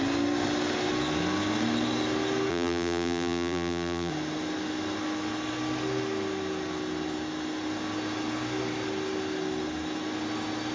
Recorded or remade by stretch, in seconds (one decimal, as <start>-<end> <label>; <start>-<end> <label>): 0.0-2.5 recorded; 2.5-4.1 remade; 4.1-10.7 recorded